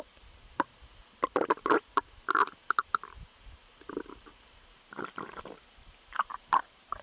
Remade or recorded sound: remade